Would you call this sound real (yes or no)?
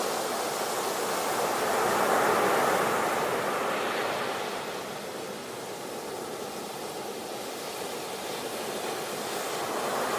yes